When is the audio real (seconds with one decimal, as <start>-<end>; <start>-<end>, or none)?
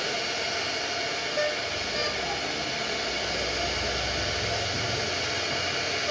0.0-6.1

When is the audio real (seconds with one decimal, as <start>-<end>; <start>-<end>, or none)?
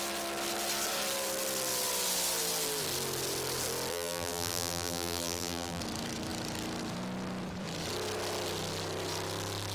0.0-3.9; 5.8-9.7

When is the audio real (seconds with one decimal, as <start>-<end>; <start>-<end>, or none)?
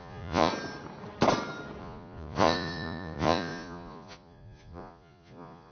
0.5-1.8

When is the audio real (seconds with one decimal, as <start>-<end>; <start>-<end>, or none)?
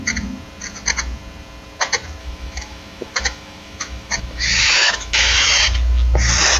0.0-2.2; 5.6-6.6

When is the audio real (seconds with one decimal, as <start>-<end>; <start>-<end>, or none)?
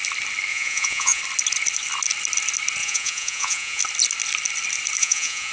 0.0-0.5; 1.2-2.8; 3.8-5.0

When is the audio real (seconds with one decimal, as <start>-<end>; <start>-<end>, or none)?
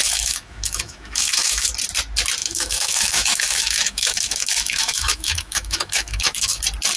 1.7-2.4; 6.6-7.0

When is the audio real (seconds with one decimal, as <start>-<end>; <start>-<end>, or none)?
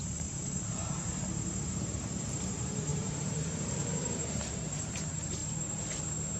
0.8-1.7; 5.4-6.4